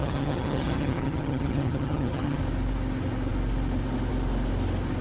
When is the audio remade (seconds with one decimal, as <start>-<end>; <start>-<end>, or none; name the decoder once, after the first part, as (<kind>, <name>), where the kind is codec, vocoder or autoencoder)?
0.0-2.4 (vocoder, HiFi-GAN)